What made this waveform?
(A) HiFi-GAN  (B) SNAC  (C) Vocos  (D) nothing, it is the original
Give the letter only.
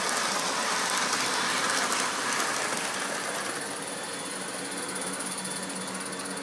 D